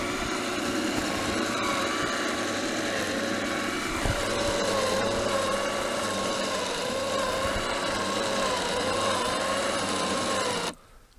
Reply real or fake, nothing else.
fake